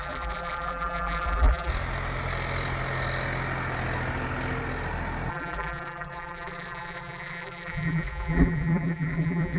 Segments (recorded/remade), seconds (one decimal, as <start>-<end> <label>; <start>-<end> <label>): 0.0-1.7 remade; 1.7-5.3 recorded; 5.3-9.6 remade